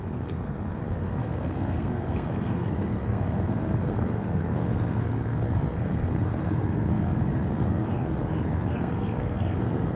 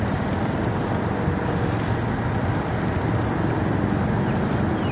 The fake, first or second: first